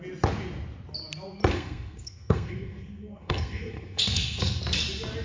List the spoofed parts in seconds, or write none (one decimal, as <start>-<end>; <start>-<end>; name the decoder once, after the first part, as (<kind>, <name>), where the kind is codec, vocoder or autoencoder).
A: 1.5-4.6 (codec, SNAC)